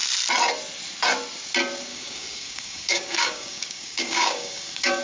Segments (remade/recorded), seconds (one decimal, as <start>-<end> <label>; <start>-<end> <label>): 0.0-1.9 recorded; 1.9-5.0 remade